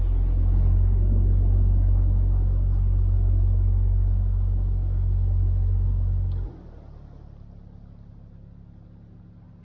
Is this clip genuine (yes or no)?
yes